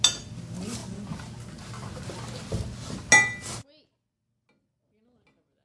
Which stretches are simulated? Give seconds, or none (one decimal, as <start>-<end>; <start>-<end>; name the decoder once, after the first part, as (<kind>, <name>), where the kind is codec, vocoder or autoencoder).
none